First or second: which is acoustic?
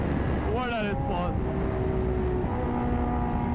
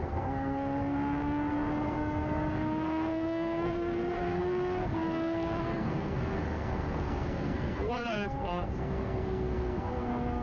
first